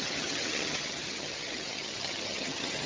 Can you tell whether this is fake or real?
fake